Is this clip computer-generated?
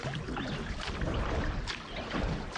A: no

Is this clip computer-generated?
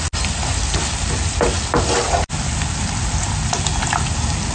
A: no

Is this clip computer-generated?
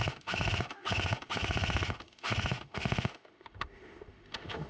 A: yes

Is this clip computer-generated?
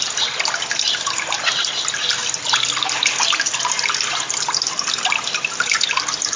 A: no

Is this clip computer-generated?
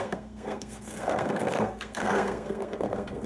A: yes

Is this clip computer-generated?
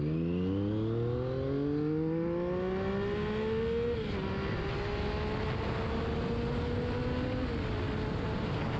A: no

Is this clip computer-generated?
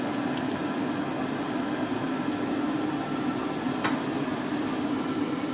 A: no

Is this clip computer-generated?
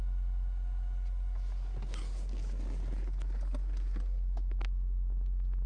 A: no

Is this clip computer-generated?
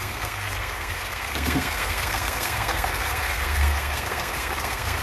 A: yes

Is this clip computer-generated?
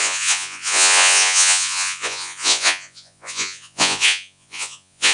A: yes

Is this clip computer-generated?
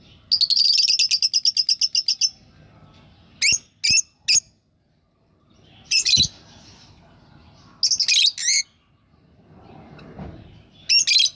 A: no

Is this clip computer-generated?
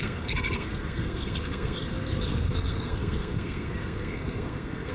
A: yes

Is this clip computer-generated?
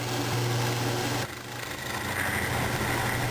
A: no